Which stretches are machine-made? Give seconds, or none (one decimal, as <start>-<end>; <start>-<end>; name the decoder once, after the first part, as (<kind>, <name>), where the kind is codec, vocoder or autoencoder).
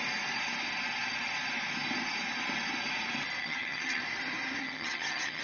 3.4-4.0 (vocoder, HiFi-GAN); 4.6-5.4